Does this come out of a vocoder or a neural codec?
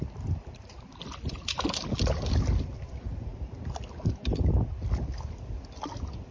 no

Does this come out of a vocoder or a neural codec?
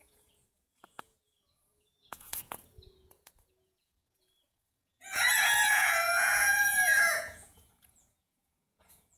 yes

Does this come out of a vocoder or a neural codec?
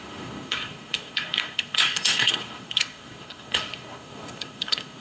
yes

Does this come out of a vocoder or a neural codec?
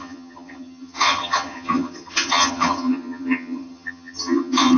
yes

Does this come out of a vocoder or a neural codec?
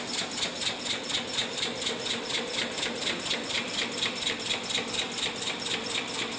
no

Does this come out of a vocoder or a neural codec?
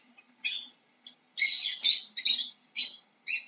no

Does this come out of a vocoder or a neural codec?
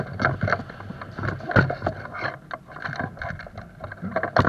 no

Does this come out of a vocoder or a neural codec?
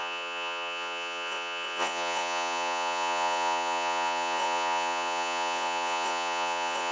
yes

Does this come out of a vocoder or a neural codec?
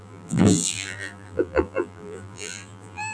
yes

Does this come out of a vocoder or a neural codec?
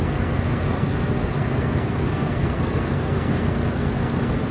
yes